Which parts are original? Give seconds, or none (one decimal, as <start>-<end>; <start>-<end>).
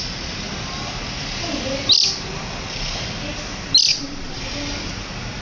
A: 0.0-3.9; 4.4-5.4